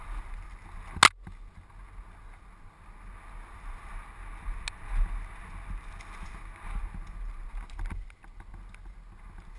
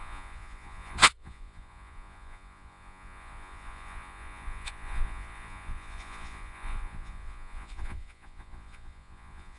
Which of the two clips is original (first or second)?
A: first